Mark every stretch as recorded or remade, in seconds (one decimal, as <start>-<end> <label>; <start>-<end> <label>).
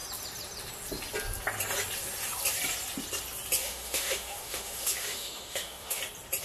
0.0-3.6 recorded; 3.6-6.0 remade; 6.0-6.4 recorded